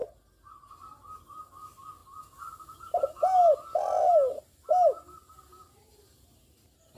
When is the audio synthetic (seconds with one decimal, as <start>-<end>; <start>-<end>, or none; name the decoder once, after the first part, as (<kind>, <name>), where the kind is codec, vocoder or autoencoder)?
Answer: none